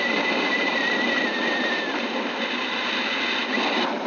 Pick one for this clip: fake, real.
real